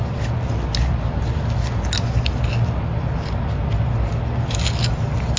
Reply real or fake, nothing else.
real